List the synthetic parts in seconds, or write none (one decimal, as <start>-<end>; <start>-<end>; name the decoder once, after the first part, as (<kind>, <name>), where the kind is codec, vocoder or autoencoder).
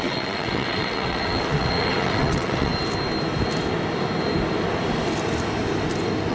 0.0-2.7 (vocoder, WaveNeXt)